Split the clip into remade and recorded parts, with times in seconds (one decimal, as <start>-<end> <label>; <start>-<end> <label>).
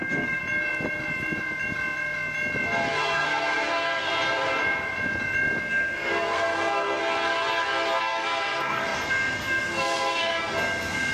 0.0-0.4 remade; 0.4-3.0 recorded; 3.0-4.1 remade; 4.1-5.6 recorded; 5.6-7.0 remade; 7.0-8.0 recorded; 8.0-11.1 remade